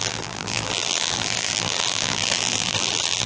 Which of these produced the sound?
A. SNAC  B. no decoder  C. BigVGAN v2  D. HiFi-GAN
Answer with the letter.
C